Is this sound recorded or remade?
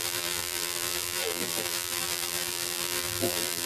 remade